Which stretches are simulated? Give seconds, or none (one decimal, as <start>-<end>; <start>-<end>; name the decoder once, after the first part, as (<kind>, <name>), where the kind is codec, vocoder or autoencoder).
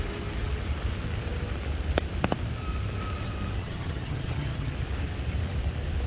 3.6-4.7 (vocoder, HiFi-GAN)